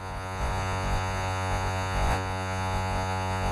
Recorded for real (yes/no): no